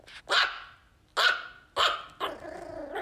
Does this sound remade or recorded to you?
recorded